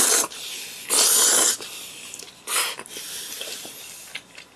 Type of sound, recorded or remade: recorded